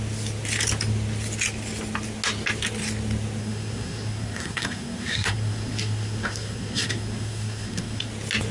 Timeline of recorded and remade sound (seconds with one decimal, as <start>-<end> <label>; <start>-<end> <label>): 0.0-3.4 recorded; 3.4-8.1 remade; 8.1-8.5 recorded